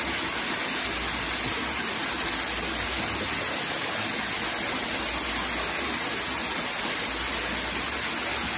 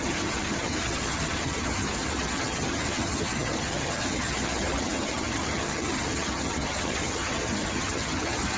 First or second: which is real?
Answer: first